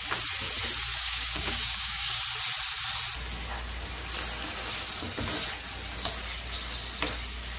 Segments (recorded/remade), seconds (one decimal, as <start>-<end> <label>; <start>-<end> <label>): 0.0-0.9 recorded; 0.9-2.2 remade; 2.2-7.6 recorded